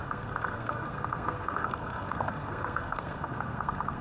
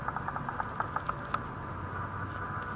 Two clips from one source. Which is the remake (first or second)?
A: first